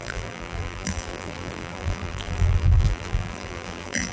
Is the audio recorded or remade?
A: remade